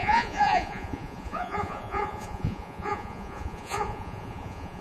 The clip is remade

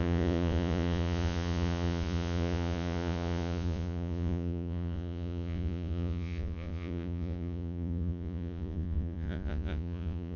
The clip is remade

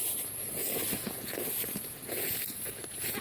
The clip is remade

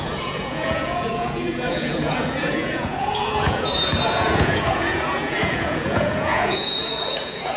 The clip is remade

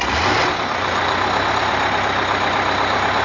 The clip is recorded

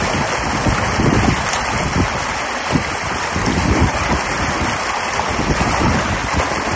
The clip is recorded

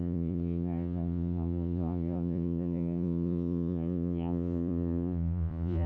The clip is remade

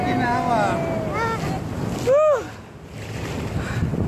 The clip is recorded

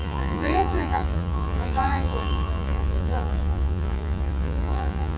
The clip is remade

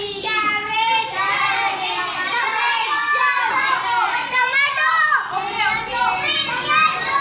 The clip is recorded